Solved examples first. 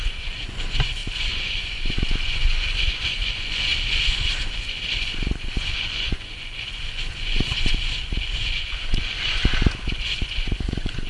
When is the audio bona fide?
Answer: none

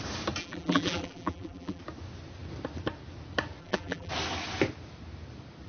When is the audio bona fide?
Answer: 0.0-0.4; 1.8-3.6; 4.1-5.7

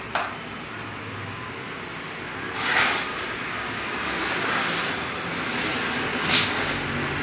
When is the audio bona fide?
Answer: 0.0-1.0; 1.7-3.1; 4.6-6.1; 6.8-7.2